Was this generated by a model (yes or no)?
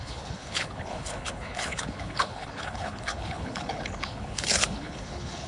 yes